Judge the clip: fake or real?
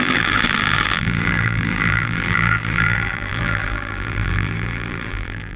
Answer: fake